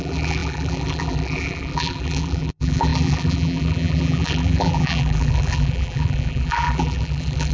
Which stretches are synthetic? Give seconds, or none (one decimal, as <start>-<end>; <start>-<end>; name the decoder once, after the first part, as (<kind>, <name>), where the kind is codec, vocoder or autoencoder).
0.0-7.5 (vocoder, BigVGAN v2)